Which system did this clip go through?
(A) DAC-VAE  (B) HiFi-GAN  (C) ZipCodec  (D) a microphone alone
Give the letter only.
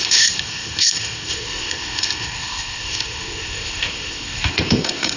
C